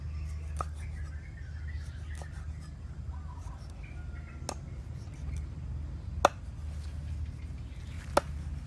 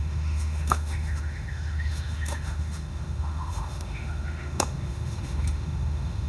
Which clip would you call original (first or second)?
first